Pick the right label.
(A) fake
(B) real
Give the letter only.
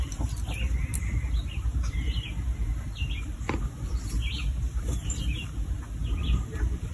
A